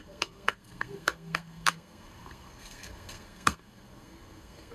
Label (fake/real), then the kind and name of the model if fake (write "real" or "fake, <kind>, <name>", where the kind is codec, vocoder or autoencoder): fake, codec, SNAC